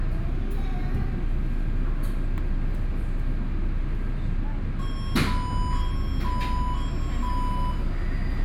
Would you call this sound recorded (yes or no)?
yes